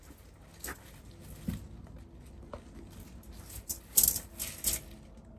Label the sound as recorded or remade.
recorded